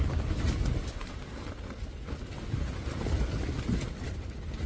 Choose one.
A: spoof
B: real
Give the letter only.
B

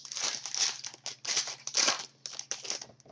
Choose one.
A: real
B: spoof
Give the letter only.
A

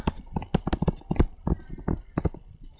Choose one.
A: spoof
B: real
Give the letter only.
B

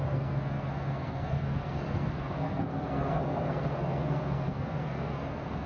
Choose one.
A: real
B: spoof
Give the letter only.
B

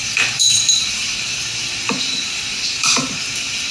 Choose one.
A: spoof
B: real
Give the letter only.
A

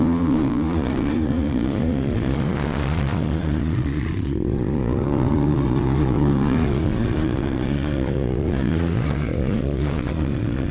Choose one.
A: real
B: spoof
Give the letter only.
B